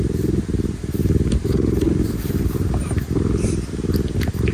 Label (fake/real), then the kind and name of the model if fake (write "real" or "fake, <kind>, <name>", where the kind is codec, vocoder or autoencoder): real